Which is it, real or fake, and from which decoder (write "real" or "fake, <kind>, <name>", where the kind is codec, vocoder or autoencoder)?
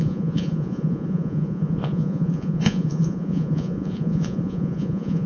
fake, vocoder, Vocos